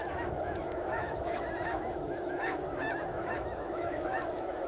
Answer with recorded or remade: remade